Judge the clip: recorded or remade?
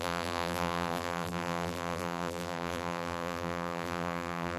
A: remade